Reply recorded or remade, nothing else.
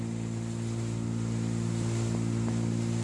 recorded